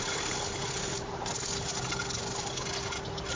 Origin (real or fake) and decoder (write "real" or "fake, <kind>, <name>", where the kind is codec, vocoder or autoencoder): real